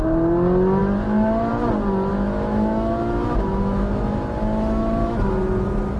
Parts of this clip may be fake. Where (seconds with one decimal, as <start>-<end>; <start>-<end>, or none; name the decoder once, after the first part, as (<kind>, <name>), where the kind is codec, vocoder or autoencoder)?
2.1-5.3 (autoencoder, DAC-VAE)